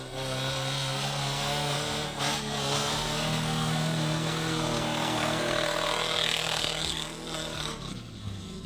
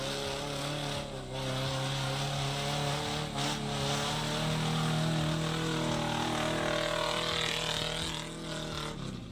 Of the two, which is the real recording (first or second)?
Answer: second